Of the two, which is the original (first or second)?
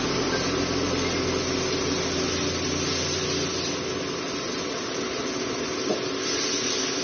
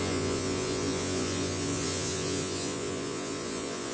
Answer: first